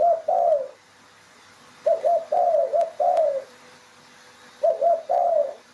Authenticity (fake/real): real